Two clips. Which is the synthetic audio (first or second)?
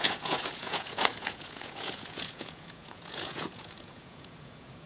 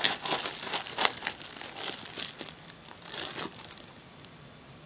first